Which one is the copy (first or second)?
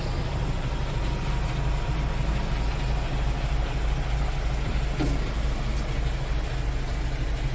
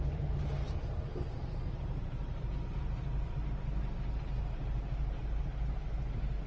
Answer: second